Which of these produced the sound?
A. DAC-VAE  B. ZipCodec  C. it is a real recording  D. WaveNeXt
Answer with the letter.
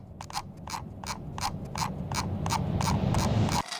C